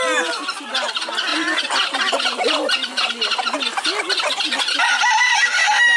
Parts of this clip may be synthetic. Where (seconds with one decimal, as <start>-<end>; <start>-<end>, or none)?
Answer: none